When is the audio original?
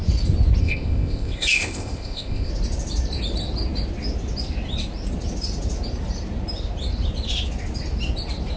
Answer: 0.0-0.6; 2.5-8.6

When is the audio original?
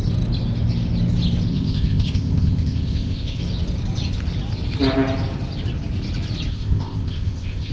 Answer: 0.0-1.5; 3.4-6.5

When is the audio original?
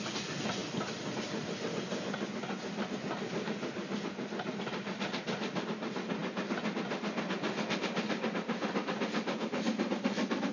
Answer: 0.0-10.5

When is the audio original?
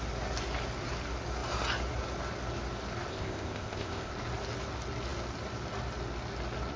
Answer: 0.0-3.1; 4.1-6.8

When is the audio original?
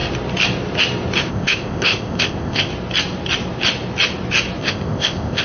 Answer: 0.0-1.3; 2.7-4.6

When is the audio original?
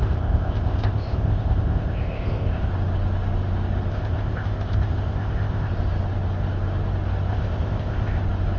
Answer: 2.7-3.9; 5.7-7.3; 8.2-8.6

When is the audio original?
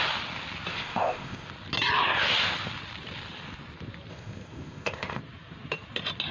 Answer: 0.0-0.7; 1.5-4.1; 5.2-6.3